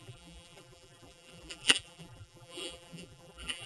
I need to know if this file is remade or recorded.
remade